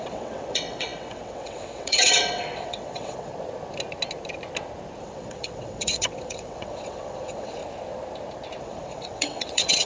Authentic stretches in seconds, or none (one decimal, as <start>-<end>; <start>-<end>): 3.3-5.0; 7.6-8.6